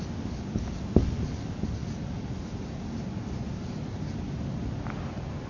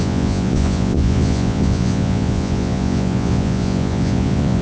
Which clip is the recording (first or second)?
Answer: first